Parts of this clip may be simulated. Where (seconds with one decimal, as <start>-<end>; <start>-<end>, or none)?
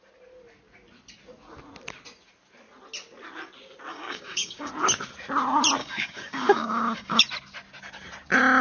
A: 3.9-4.7; 5.8-7.2